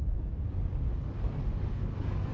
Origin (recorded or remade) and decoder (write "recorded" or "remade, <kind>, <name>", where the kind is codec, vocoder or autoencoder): remade, codec, DAC